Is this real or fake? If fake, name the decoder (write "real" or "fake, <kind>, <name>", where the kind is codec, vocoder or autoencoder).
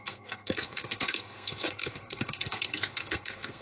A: fake, codec, SNAC